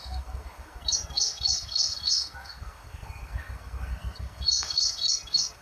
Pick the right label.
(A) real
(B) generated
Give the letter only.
B